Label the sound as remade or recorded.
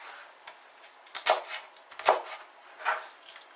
recorded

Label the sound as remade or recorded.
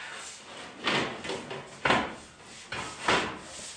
recorded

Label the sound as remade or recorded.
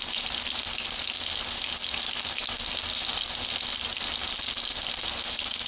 recorded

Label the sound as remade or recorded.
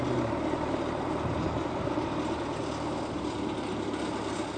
recorded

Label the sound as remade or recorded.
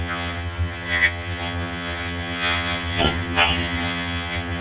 remade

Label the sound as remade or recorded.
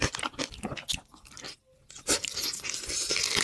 recorded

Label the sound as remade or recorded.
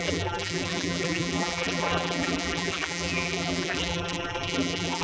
remade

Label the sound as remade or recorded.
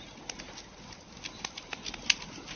recorded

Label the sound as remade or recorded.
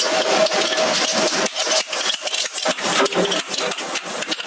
recorded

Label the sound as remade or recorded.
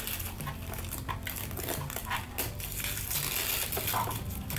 recorded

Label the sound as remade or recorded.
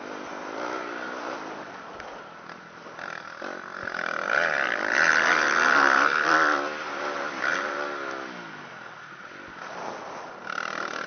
recorded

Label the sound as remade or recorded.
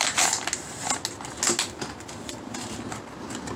recorded